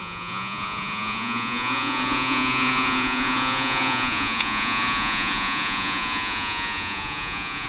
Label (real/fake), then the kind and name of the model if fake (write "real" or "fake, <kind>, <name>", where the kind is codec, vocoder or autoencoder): fake, vocoder, Vocos